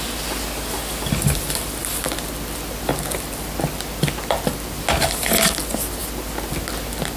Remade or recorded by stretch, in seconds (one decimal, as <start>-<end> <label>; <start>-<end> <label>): 0.0-7.2 recorded